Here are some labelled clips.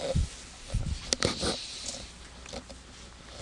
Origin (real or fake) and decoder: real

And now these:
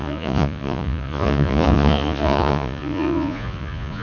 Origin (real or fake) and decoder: fake, vocoder, Vocos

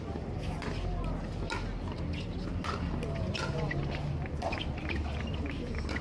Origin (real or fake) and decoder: real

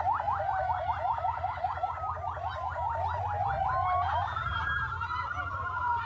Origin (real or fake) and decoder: real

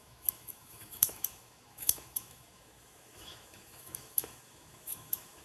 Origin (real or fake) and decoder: fake, autoencoder, DAC-VAE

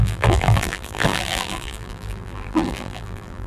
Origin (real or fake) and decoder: fake, vocoder, BigVGAN v2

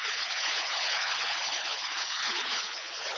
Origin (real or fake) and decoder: fake, codec, HILCodec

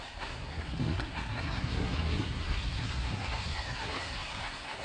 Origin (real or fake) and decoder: fake, codec, SNAC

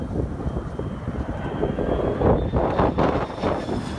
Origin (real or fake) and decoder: real